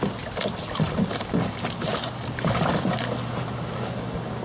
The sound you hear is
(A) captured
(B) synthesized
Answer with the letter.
A